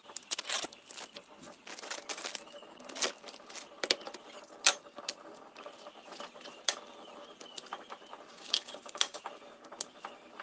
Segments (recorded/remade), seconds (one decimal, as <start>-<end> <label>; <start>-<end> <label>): 0.0-8.3 recorded; 8.3-9.3 remade; 9.3-10.4 recorded